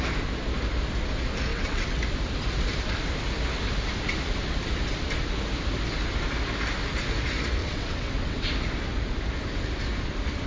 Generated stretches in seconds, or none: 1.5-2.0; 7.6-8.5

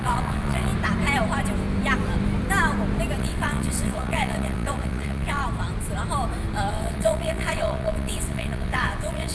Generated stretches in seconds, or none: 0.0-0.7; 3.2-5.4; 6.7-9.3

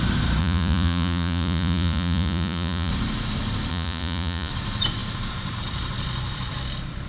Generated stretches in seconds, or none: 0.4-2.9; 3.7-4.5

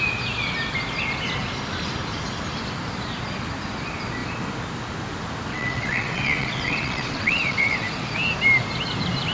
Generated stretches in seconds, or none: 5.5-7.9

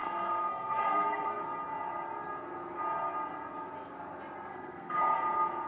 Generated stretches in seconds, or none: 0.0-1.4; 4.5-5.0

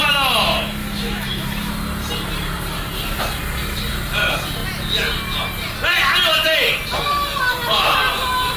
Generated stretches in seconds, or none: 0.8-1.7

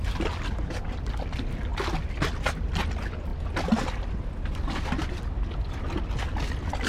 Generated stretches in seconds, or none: none